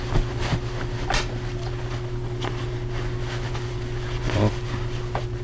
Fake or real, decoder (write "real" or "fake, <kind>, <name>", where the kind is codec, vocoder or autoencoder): real